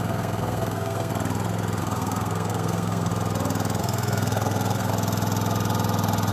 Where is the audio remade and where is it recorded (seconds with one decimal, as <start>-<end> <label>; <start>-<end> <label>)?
0.0-1.1 remade; 1.1-1.8 recorded; 1.8-3.1 remade; 3.1-3.8 recorded; 3.8-4.9 remade; 4.9-6.3 recorded